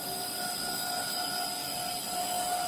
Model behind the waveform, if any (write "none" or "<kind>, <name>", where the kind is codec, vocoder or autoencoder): none